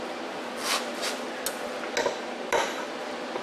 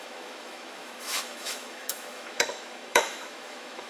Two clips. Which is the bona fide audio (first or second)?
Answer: first